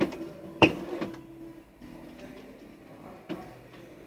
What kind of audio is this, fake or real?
fake